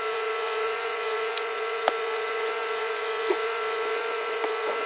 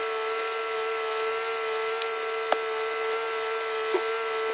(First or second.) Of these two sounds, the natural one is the second